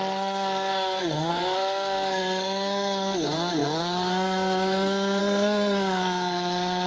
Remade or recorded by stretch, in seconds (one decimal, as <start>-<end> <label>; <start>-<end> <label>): 0.0-6.9 remade